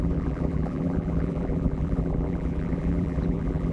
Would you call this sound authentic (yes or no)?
no